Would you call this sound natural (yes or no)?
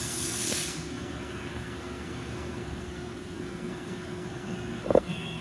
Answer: no